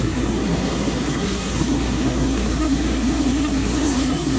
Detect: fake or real fake